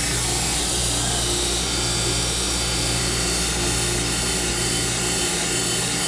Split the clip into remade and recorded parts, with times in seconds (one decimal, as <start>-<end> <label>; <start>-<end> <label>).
0.0-6.1 recorded

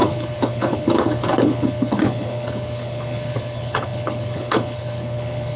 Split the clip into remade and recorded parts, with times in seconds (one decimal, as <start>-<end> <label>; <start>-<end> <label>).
0.0-5.6 remade

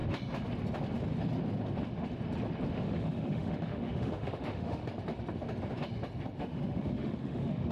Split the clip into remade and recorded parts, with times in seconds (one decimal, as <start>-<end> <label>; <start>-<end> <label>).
0.0-2.7 recorded; 2.7-4.8 remade; 4.8-6.4 recorded; 6.4-7.7 remade

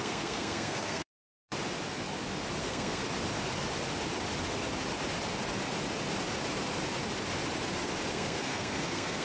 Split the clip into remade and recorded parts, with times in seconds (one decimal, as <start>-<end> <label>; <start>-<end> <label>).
0.0-1.3 remade; 1.3-2.6 recorded; 2.6-3.0 remade; 3.0-8.1 recorded; 8.1-9.2 remade

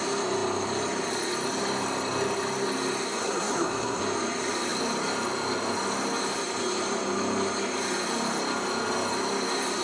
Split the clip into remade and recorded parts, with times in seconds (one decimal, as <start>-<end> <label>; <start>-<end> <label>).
0.0-3.2 recorded; 3.2-4.0 remade; 4.0-9.8 recorded

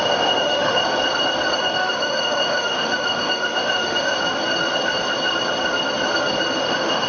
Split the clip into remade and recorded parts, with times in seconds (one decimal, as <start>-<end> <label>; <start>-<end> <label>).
0.0-0.8 remade; 0.8-1.6 recorded; 1.6-4.1 remade; 4.1-6.6 recorded; 6.6-7.1 remade

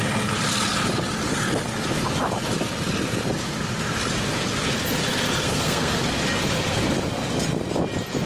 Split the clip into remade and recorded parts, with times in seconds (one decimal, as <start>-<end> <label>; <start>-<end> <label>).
0.0-5.4 recorded; 5.4-6.0 remade; 6.0-8.3 recorded